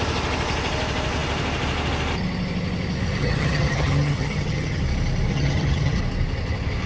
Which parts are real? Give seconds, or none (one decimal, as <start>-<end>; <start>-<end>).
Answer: 0.0-3.2; 4.8-5.3; 6.0-6.9